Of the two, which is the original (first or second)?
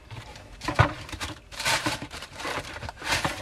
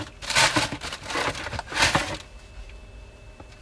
second